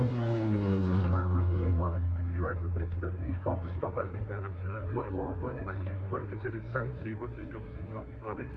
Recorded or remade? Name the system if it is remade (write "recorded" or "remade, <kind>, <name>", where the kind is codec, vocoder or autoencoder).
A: remade, codec, SNAC